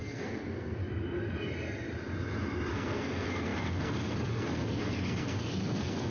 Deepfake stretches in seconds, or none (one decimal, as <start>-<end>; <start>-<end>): 0.0-0.8; 2.7-6.1